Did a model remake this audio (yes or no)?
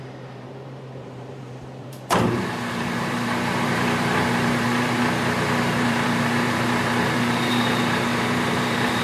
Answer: yes